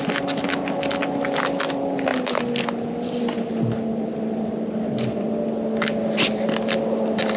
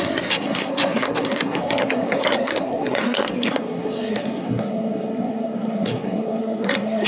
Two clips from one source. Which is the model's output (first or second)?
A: second